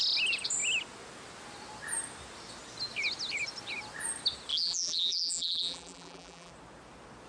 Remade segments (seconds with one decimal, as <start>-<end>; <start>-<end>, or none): 4.5-6.5